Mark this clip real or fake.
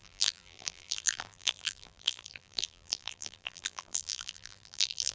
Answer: fake